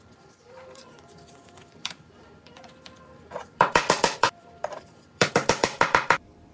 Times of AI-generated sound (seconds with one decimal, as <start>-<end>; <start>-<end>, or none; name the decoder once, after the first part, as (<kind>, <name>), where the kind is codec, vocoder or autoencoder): 0.0-6.5 (vocoder, BigVGAN v2)